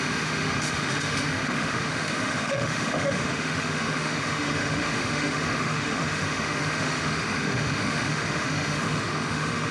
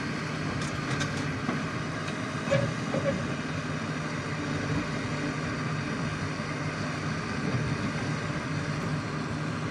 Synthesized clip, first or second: first